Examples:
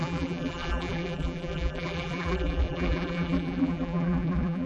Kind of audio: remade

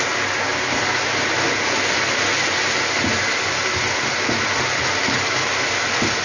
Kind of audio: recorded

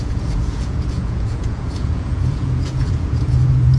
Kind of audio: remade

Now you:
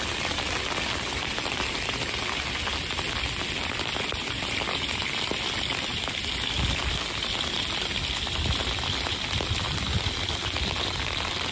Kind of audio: recorded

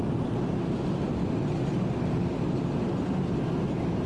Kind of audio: recorded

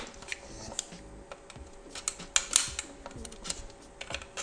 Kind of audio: recorded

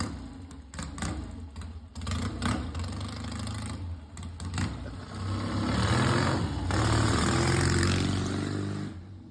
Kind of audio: recorded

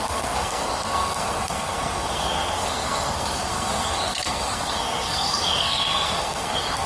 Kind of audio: remade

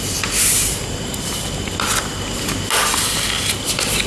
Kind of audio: recorded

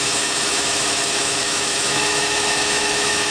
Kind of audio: remade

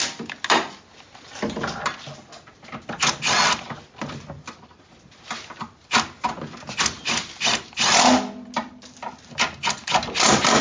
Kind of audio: recorded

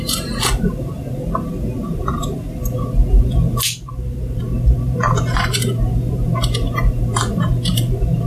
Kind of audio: remade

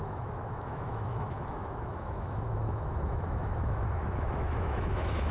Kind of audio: remade